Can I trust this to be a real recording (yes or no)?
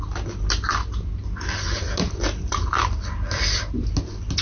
yes